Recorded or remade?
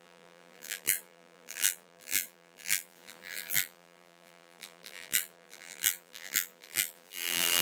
remade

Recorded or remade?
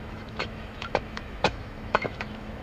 remade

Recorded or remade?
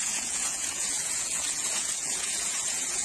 remade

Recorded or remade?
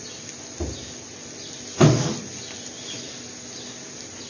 recorded